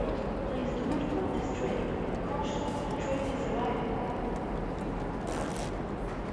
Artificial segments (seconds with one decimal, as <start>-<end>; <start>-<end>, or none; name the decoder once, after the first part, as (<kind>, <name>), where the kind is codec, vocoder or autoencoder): none